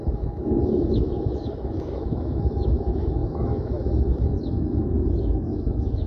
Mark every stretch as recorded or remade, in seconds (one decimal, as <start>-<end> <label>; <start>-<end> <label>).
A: 0.0-6.1 remade